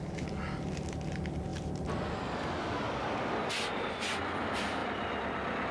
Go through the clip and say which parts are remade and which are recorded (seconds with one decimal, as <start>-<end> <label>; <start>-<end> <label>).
0.0-5.7 recorded